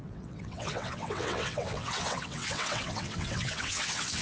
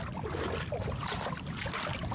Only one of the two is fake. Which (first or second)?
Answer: first